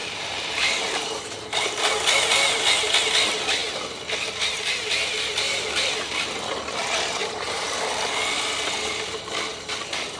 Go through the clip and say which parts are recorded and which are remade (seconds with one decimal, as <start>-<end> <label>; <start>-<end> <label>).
0.0-1.8 remade; 1.8-7.2 recorded; 7.2-7.8 remade; 7.8-10.2 recorded

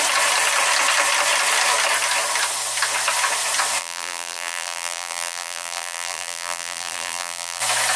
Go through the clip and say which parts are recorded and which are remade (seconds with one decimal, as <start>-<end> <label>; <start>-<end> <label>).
0.0-3.8 recorded; 3.8-7.6 remade; 7.6-8.0 recorded

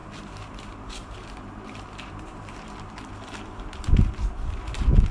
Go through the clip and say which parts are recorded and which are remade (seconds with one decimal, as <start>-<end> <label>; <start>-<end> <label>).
0.0-3.1 remade; 3.1-5.1 recorded

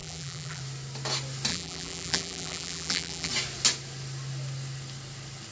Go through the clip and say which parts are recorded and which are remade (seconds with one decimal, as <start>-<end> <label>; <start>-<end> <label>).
0.0-0.6 remade; 0.6-1.5 recorded; 1.5-3.3 remade; 3.3-5.5 recorded

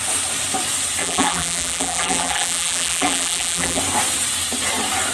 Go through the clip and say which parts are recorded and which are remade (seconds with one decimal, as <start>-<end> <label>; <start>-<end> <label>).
0.0-1.0 recorded; 1.0-3.8 remade; 3.8-5.1 recorded

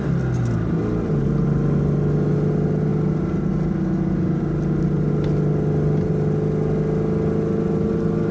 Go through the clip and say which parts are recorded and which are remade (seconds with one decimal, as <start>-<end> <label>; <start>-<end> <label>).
0.0-8.3 recorded